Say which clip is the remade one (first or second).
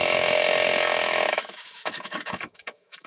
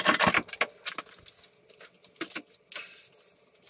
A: first